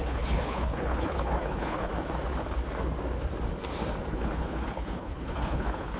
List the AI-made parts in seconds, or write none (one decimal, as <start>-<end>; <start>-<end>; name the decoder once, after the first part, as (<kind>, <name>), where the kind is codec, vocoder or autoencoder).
0.0-1.9 (codec, HILCodec); 4.1-6.0